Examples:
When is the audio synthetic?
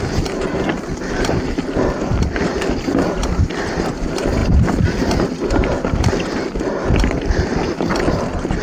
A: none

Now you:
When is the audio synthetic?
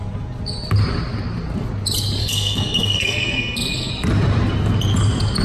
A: 2.2-3.9 (codec, SNAC)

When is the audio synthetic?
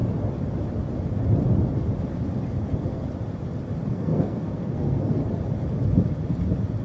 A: 2.7-3.1 (codec, SNAC); 3.9-5.2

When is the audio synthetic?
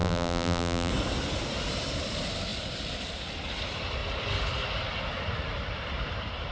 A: 0.0-0.9 (vocoder, BigVGAN v2)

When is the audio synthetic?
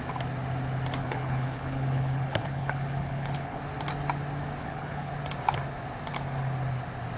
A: 1.0-3.6 (codec, HILCodec); 4.6-5.1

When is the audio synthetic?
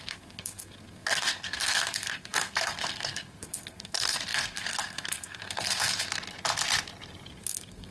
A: 0.0-6.1 (codec, SNAC); 7.3-7.9